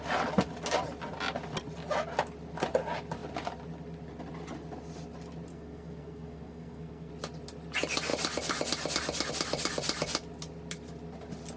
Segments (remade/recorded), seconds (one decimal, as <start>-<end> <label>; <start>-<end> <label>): 0.0-5.5 recorded; 5.5-7.1 remade; 7.1-11.6 recorded